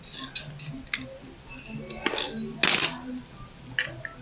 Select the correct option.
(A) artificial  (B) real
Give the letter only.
B